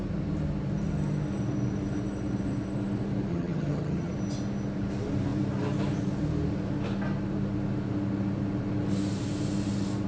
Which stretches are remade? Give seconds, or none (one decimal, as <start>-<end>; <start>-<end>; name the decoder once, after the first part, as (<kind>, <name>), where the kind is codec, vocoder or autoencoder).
3.3-4.1 (vocoder, HiFi-GAN)